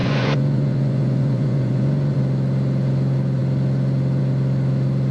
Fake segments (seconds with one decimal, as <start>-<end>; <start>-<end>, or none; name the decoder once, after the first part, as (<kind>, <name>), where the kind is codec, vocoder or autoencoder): 0.0-2.2 (vocoder, Vocos)